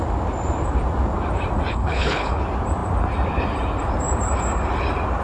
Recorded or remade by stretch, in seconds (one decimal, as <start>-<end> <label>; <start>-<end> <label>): 0.0-1.7 recorded; 1.7-2.4 remade; 2.4-5.2 recorded